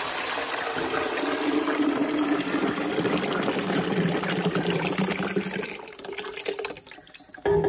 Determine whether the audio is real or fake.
real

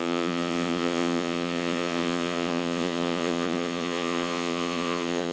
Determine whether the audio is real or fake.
fake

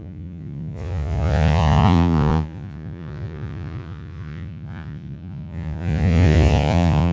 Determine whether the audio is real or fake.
fake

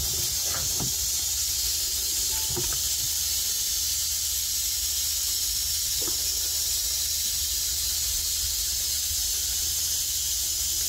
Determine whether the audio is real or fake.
real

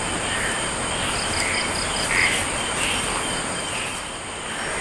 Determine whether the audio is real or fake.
real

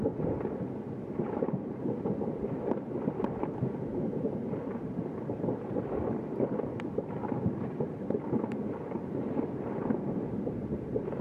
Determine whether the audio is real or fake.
real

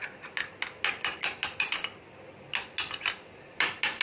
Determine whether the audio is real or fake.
real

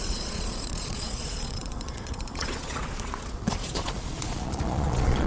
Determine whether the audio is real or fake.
fake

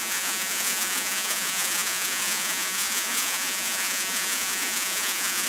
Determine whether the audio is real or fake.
fake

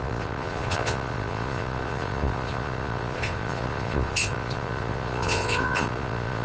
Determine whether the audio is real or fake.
fake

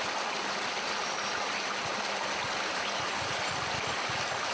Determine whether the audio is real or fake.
real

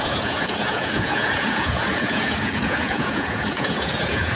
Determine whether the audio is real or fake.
fake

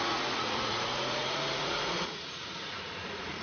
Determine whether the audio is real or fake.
fake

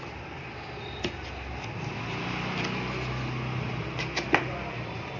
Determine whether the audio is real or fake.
real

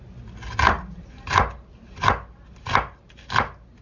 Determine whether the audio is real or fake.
real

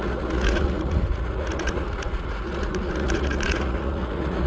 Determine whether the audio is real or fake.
fake